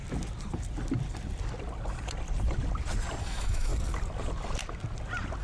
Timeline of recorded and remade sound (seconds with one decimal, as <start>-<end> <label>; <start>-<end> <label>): 0.0-3.2 recorded; 3.2-3.7 remade; 3.7-5.4 recorded